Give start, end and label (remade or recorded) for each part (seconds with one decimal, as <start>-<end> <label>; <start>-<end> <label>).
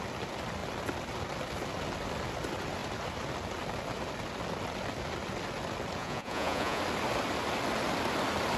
0.0-6.0 recorded; 6.0-6.8 remade; 6.8-8.6 recorded